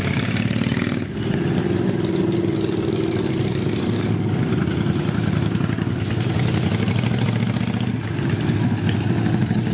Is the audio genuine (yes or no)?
yes